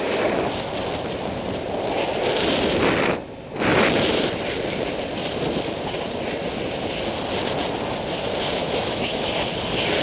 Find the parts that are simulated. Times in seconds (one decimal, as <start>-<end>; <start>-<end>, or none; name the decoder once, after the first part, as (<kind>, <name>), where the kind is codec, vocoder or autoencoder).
8.6-9.2 (autoencoder, DAC-VAE)